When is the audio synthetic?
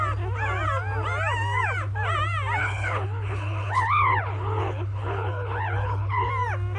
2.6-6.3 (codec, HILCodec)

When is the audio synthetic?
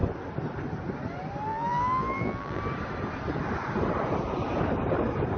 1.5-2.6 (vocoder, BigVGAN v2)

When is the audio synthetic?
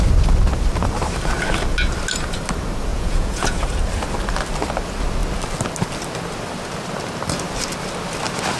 2.9-3.6 (vocoder, Vocos)